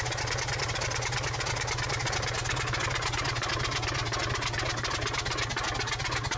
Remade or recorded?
recorded